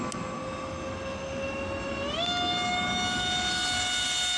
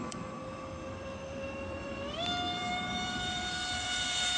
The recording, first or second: first